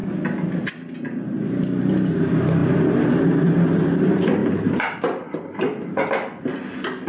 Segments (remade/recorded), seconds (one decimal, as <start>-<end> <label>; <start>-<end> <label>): 0.0-4.4 recorded; 4.4-5.0 remade; 5.0-7.1 recorded